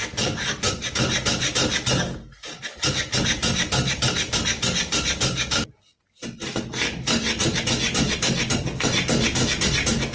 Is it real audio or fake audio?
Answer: real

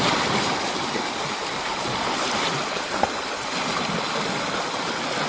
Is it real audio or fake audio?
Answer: fake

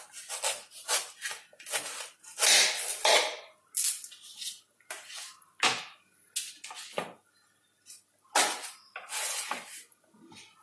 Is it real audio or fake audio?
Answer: real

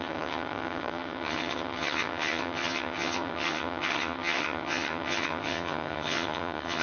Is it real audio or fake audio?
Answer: fake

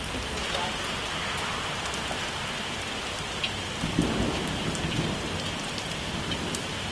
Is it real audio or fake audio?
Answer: real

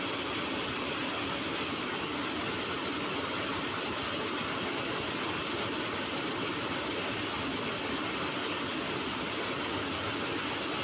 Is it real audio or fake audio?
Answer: real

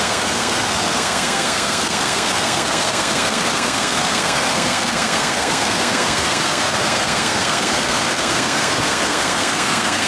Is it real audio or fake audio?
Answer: fake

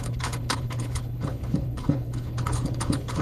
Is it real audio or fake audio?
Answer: fake